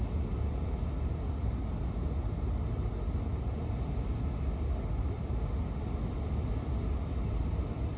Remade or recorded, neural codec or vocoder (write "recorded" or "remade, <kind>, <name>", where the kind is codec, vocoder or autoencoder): recorded